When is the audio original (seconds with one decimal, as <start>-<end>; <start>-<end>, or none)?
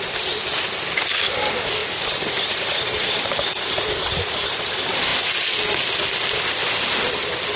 0.0-1.8; 4.6-7.6